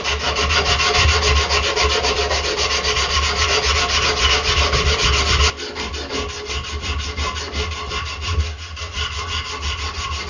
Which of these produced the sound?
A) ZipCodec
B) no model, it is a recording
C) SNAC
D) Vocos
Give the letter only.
B